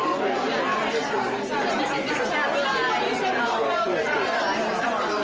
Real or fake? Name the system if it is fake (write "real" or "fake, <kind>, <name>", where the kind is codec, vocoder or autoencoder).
real